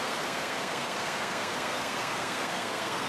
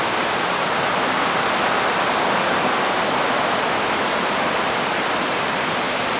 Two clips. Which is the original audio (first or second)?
second